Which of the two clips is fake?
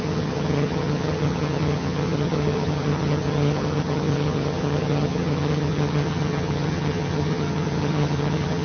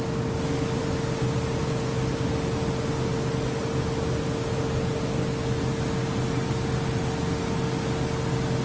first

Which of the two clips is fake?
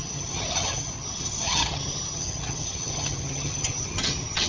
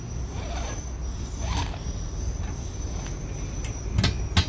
first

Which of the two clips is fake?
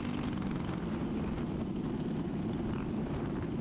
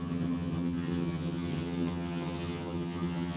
second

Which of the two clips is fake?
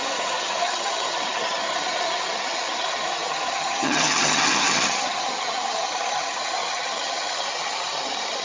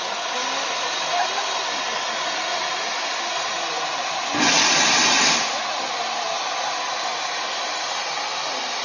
first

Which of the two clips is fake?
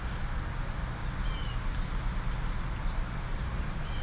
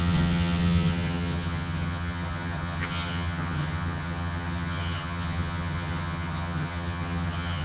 second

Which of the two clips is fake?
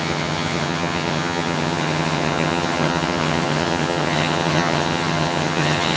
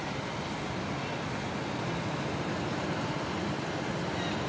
first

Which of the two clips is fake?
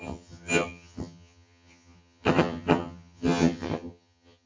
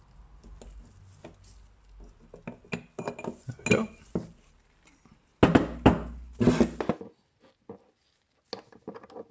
first